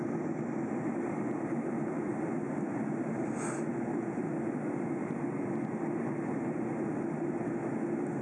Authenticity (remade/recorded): recorded